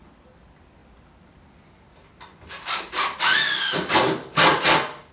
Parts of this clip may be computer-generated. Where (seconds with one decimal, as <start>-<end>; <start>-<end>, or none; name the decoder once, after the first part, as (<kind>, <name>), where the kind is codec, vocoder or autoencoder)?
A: none